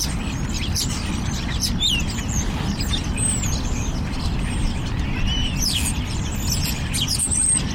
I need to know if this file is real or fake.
real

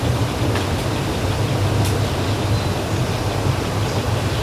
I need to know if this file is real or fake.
real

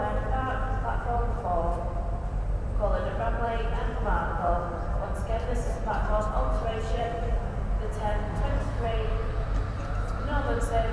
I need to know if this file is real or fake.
fake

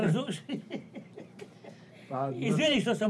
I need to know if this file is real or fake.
fake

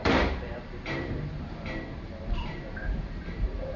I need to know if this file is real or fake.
fake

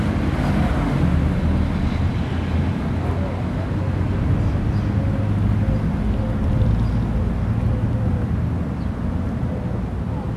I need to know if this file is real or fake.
real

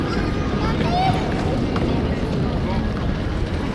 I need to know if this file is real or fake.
real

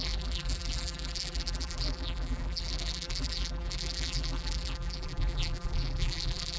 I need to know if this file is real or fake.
fake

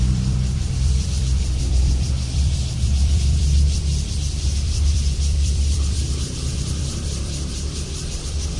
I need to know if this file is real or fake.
fake